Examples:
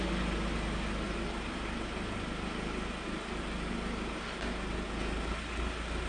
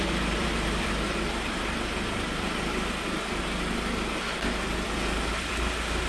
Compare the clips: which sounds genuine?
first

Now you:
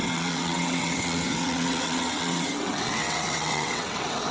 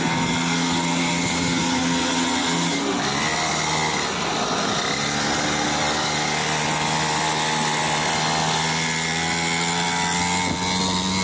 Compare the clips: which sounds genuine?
second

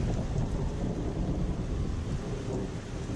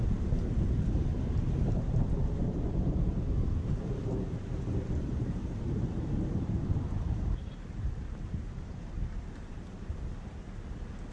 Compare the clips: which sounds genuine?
first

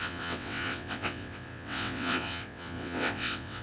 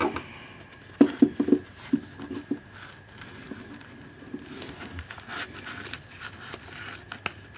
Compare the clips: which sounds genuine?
second